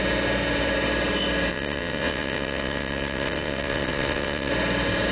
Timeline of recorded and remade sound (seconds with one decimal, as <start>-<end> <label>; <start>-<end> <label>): 0.0-1.5 recorded; 1.5-4.5 remade; 4.5-5.1 recorded